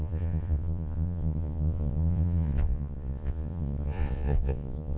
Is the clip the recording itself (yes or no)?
no